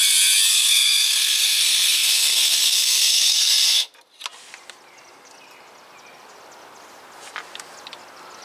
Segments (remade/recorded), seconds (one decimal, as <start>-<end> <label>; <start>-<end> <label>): 0.0-0.5 recorded; 0.5-3.9 remade; 3.9-8.4 recorded